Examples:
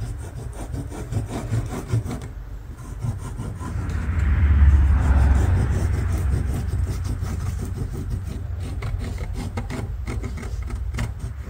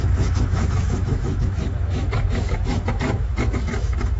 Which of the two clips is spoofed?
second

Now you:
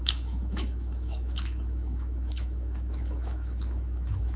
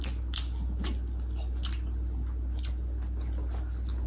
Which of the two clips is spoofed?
first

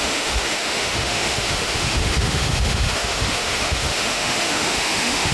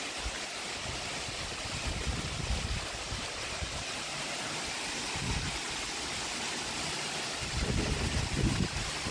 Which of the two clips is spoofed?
first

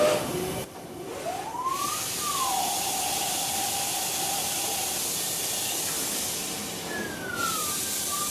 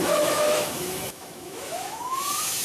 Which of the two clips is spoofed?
second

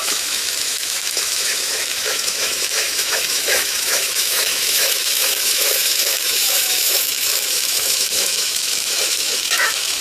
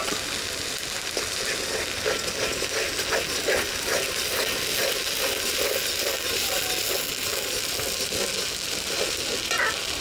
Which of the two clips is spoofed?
first